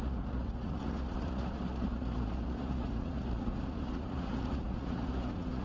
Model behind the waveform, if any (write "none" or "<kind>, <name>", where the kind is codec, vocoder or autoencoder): vocoder, Vocos